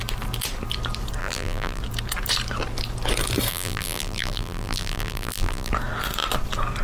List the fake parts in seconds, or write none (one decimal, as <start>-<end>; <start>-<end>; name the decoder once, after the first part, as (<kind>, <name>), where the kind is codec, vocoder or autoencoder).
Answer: 1.2-1.8 (vocoder, BigVGAN v2); 3.5-5.7